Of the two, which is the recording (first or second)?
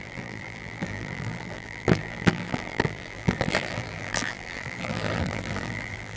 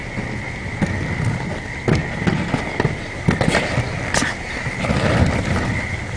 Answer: second